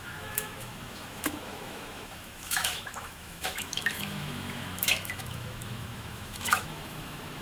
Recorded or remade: remade